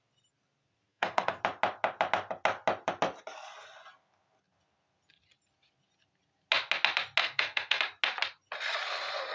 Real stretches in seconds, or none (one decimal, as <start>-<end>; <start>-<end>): 0.0-0.9; 1.4-7.2; 7.8-9.3